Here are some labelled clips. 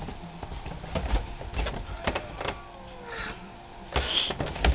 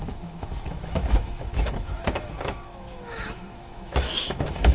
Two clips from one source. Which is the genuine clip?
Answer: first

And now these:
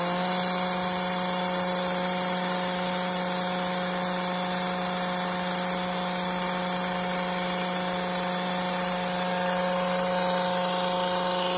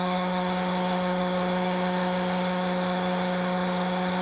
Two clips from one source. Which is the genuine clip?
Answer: first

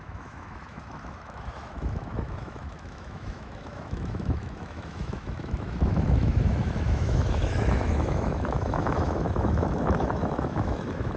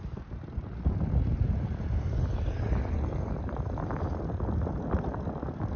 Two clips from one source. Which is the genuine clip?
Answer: second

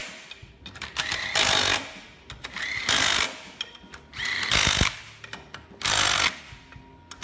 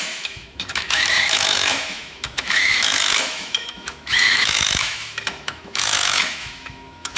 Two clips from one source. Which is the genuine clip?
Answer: first